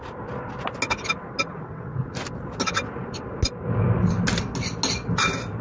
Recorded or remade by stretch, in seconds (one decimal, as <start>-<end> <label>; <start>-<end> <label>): 0.0-1.5 recorded; 1.5-2.0 remade; 2.0-5.6 recorded

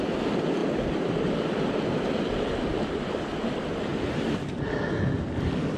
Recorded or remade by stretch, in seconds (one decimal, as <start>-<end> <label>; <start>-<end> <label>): 0.0-5.8 recorded

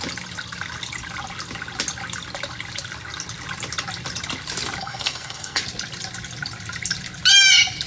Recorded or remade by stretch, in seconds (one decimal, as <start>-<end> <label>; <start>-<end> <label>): 0.0-4.8 recorded; 4.8-5.6 remade; 5.6-7.9 recorded

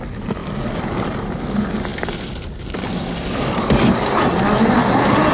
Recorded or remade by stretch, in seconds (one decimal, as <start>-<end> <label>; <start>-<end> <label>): 0.0-5.3 recorded

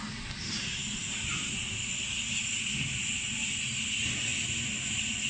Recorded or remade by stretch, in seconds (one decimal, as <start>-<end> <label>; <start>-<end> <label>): 0.0-5.3 recorded

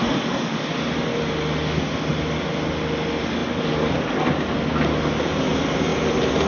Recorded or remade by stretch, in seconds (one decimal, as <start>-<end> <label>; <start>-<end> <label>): 0.0-6.5 recorded

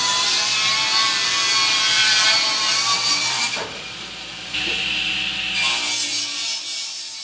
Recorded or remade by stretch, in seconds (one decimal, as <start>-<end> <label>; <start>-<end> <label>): 0.0-4.8 remade; 4.8-6.2 recorded; 6.2-7.2 remade